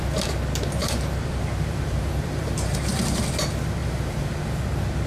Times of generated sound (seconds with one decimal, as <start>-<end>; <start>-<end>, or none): 0.8-3.2; 3.8-4.4